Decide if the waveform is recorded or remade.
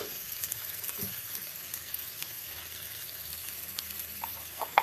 remade